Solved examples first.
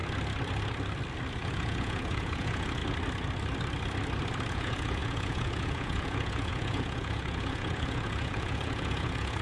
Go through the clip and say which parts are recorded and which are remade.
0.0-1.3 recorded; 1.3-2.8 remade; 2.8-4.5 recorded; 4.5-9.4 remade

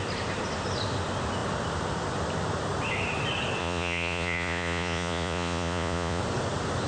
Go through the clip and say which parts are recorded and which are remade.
0.0-3.6 recorded; 3.6-6.2 remade; 6.2-6.9 recorded